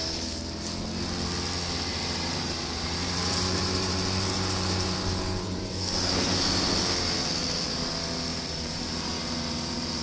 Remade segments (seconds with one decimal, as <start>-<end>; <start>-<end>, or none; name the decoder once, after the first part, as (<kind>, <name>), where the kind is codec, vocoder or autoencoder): 1.9-5.7 (vocoder, BigVGAN v2); 8.3-9.1